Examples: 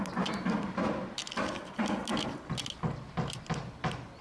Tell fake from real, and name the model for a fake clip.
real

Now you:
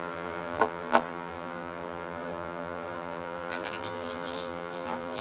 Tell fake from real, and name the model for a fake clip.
fake, vocoder, BigVGAN v2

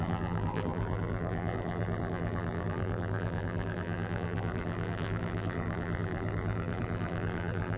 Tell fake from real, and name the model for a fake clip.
fake, vocoder, BigVGAN v2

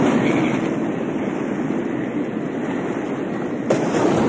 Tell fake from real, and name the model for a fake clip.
fake, vocoder, BigVGAN v2